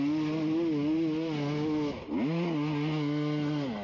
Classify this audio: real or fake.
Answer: real